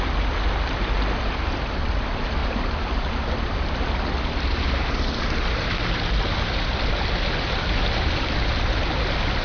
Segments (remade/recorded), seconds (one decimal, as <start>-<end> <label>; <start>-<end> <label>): 0.0-9.4 recorded